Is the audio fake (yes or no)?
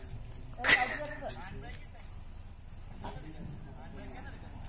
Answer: no